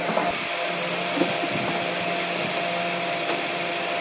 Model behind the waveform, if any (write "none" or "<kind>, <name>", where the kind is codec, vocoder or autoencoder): none